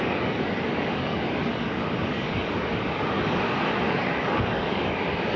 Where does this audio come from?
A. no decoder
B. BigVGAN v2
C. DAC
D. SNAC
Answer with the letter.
C